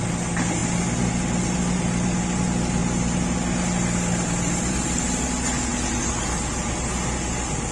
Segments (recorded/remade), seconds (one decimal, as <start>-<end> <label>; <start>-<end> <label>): 0.0-7.7 recorded